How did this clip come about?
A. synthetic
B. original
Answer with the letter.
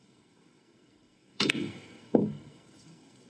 A